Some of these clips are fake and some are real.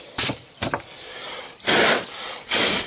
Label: real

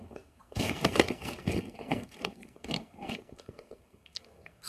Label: fake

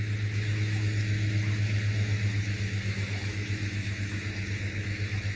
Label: fake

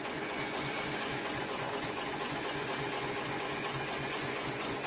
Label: fake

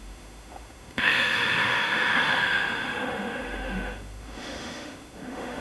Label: fake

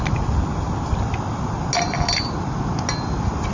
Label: real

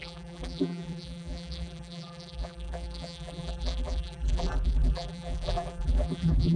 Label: fake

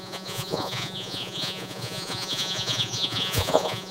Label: fake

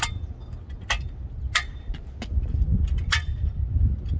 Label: real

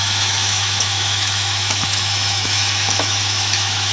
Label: fake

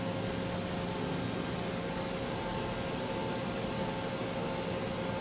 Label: real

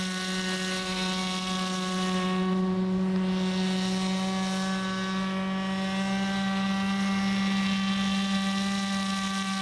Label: real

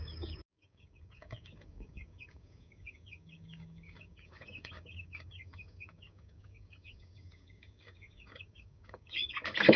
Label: fake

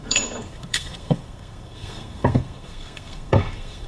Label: fake